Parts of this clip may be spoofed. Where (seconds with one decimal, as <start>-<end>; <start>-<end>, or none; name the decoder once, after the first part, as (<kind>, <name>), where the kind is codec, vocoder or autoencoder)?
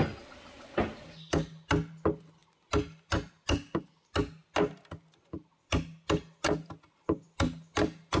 none